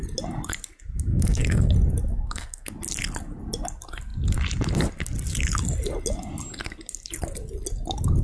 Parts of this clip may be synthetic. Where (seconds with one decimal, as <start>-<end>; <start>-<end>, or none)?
1.1-1.7; 2.1-2.7